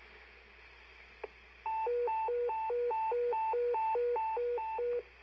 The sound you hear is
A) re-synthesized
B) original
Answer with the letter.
B